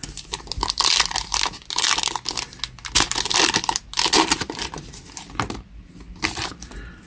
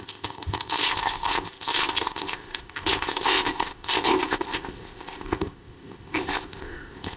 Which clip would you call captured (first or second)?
first